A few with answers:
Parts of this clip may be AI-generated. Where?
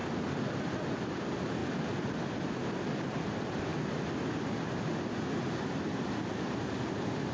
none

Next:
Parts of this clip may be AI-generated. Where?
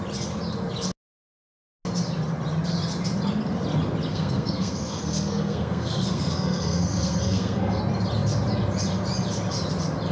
4.1-7.8 (codec, SNAC)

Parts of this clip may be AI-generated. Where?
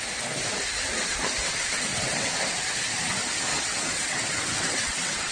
1.9-2.4 (vocoder, WaveNeXt); 3.5-5.3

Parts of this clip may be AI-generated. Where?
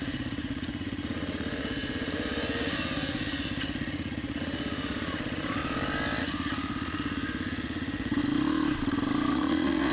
0.0-5.6 (vocoder, Vocos); 6.2-8.2; 9.3-9.9